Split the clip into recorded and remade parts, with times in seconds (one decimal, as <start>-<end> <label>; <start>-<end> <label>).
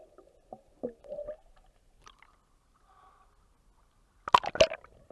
0.0-5.1 recorded